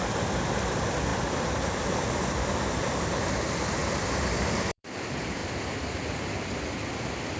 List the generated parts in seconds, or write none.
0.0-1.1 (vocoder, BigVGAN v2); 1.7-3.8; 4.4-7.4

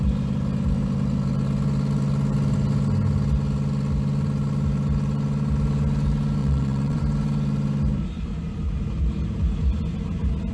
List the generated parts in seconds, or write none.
6.4-7.0 (vocoder, WaveNeXt)

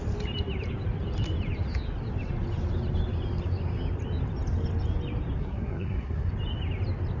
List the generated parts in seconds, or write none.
5.4-6.3 (codec, SNAC)

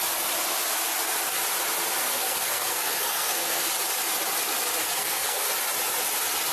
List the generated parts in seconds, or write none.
2.0-3.7 (codec, SNAC); 4.8-5.5

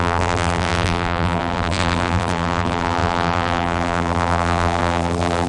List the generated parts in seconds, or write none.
0.0-5.5 (vocoder, BigVGAN v2)